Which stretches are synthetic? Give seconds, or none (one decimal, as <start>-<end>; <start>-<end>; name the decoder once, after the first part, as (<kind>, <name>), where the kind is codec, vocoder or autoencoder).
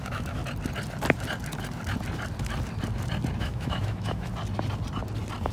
0.0-0.4 (autoencoder, DAC-VAE); 3.4-4.3